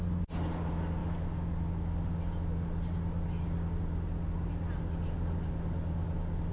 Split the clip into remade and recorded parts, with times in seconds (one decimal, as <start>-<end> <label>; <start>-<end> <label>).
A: 0.0-6.5 recorded